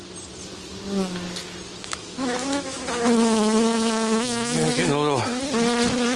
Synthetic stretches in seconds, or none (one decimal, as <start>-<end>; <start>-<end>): 1.7-5.4